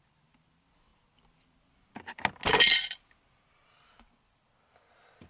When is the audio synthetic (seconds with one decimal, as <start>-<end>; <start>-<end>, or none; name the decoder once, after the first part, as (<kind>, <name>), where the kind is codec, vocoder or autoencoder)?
none